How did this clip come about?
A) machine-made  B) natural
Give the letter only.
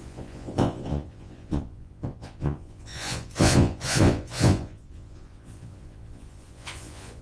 A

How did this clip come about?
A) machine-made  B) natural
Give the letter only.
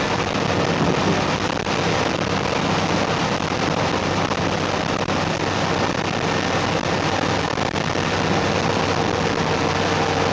B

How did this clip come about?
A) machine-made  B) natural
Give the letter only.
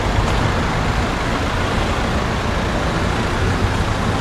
B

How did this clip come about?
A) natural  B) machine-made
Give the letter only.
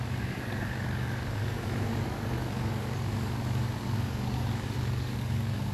B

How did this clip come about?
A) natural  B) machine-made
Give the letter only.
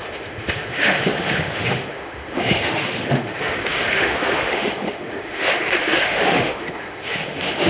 B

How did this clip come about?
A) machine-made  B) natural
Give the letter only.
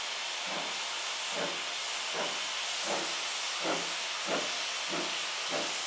B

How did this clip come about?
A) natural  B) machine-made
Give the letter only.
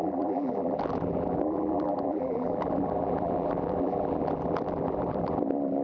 B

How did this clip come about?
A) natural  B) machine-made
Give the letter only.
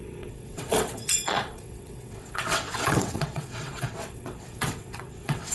B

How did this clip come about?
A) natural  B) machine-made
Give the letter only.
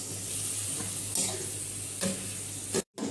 A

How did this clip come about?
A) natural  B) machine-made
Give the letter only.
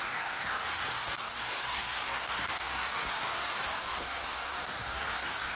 B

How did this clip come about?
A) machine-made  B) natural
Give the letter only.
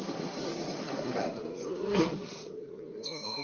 A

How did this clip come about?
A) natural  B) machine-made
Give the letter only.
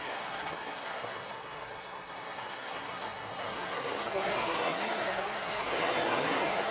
B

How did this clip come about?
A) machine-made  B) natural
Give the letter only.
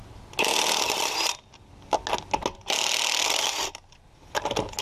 B